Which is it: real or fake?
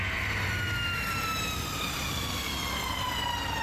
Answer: real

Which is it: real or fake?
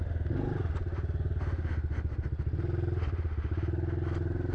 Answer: real